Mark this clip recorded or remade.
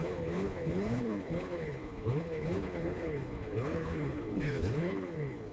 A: remade